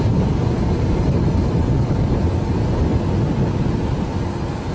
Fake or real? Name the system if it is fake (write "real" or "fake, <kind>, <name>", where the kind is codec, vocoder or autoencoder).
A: real